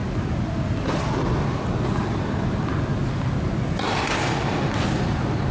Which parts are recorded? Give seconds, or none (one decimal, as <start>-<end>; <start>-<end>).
0.0-5.5